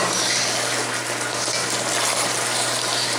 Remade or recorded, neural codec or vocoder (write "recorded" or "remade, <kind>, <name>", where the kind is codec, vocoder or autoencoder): recorded